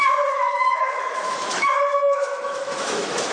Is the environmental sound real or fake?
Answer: fake